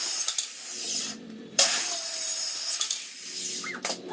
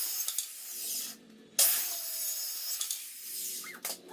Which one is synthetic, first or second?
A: first